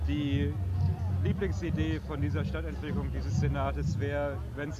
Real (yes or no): yes